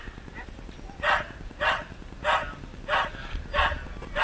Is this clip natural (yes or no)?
yes